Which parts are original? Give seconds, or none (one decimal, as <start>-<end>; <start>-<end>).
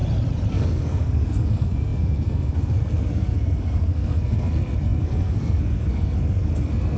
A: 0.0-0.5